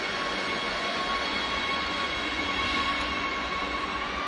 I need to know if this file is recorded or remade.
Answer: remade